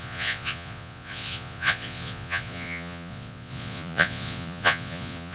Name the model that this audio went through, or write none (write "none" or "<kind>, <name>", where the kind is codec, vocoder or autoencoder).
vocoder, Vocos